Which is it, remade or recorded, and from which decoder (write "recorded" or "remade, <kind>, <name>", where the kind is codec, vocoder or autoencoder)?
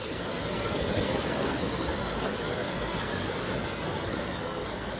remade, codec, SNAC